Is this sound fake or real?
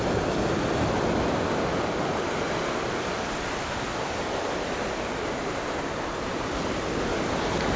real